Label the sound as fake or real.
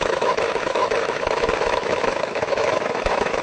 fake